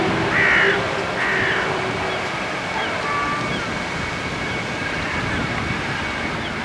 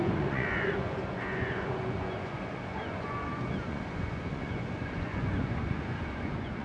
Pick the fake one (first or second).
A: second